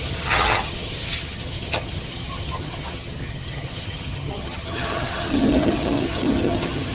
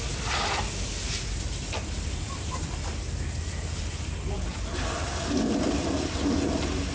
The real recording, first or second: second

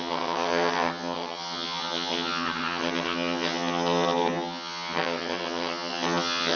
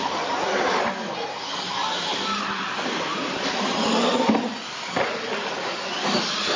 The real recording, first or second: second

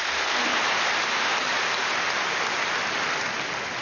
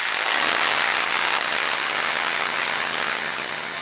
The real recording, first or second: first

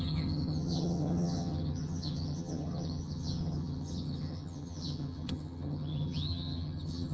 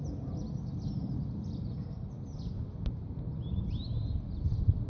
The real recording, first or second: second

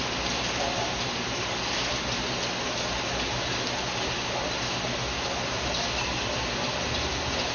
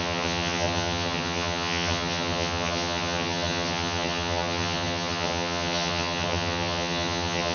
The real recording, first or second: first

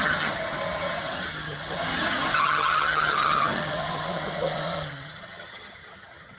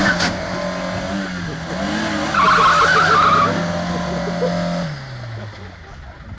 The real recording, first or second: second